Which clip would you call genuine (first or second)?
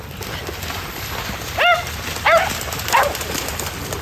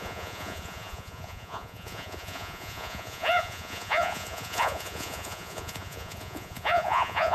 first